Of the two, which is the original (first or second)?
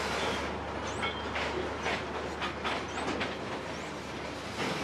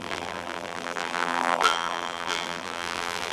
first